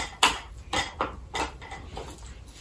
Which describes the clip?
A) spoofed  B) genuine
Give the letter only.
B